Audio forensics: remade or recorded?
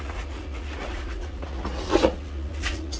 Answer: remade